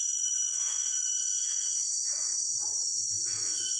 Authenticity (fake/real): fake